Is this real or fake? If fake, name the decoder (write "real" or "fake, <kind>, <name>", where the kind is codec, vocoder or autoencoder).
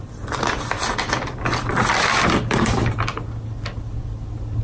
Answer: real